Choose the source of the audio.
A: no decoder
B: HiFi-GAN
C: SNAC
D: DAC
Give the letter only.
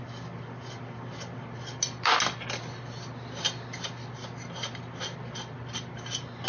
A